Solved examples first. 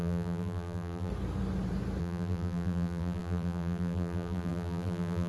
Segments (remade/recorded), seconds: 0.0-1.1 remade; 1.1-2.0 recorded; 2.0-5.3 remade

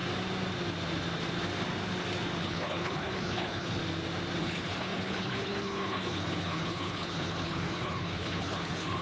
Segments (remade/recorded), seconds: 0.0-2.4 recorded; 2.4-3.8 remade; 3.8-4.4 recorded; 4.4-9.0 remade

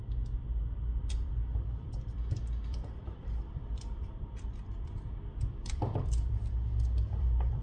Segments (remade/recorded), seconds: 0.0-1.0 recorded; 1.0-7.6 remade

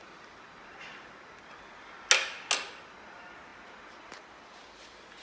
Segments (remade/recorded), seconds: 0.0-5.2 recorded

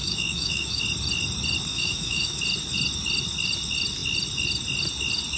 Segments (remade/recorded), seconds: 0.0-0.8 remade; 0.8-1.7 recorded; 1.7-2.4 remade; 2.4-5.4 recorded

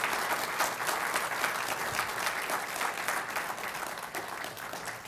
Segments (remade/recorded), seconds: 0.0-5.1 recorded

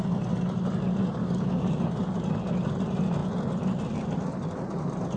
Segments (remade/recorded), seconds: 0.0-1.2 recorded; 1.2-1.8 remade; 1.8-5.2 recorded